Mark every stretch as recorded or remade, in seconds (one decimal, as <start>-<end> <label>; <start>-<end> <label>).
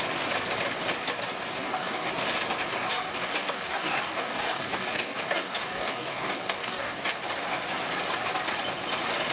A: 0.0-1.6 recorded; 1.6-2.1 remade; 2.1-2.7 recorded; 2.7-7.0 remade; 7.0-9.3 recorded